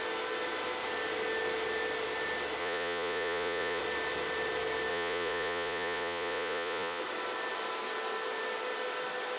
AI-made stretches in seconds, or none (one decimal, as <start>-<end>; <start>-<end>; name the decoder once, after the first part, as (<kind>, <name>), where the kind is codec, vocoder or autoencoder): 2.6-3.8 (vocoder, Vocos); 4.9-7.0

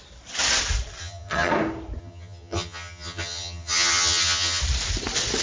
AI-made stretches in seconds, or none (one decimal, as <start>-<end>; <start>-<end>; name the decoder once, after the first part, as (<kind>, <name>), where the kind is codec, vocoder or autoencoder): 1.0-1.5 (vocoder, HiFi-GAN); 2.0-4.6

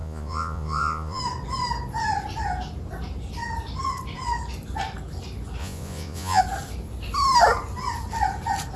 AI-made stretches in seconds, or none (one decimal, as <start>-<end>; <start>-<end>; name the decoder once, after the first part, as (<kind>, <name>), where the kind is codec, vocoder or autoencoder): 0.0-1.2 (vocoder, Vocos); 5.6-6.4

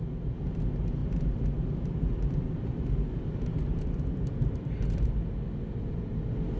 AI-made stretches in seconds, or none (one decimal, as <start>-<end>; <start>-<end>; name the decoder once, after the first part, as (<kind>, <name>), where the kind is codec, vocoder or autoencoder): 1.0-5.0 (vocoder, BigVGAN v2)

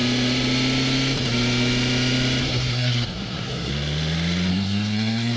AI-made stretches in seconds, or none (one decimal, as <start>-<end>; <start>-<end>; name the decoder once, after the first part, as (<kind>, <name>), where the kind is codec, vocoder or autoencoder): 2.4-3.7 (codec, SNAC); 4.5-5.4

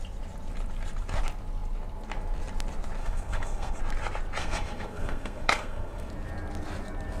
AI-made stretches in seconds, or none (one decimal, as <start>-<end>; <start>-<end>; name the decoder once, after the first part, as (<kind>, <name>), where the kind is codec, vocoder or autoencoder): 3.0-3.8 (codec, SNAC); 4.4-6.1

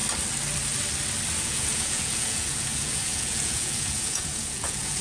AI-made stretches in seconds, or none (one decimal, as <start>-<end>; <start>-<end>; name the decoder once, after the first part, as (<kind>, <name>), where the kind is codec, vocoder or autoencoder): 1.4-5.0 (vocoder, Vocos)

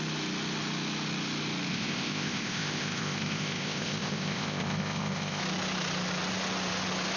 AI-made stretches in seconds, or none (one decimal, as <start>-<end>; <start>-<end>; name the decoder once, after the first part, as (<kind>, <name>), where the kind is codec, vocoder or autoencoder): 1.7-5.4 (codec, ZipCodec)